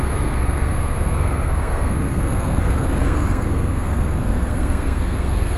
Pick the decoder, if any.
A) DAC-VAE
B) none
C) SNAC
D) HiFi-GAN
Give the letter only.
C